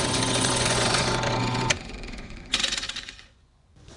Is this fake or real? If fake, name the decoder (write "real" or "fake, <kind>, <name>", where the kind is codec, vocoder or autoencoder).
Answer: fake, vocoder, Vocos